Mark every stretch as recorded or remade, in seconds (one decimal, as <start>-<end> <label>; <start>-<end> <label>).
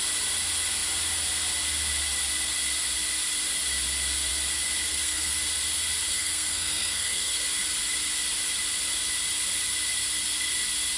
0.0-4.9 recorded; 4.9-5.4 remade; 5.4-6.1 recorded; 6.1-7.4 remade; 7.4-11.0 recorded